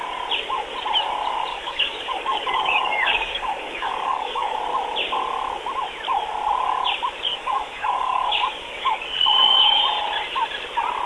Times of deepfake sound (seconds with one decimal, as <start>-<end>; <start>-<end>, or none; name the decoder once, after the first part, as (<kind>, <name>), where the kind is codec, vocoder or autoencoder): 1.5-4.6 (codec, DAC); 7.3-9.8